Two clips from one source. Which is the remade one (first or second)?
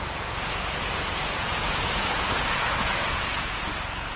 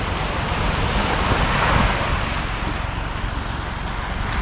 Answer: first